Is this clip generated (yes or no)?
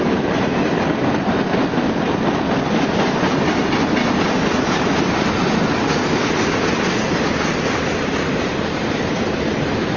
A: no